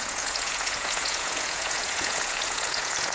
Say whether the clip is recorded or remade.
remade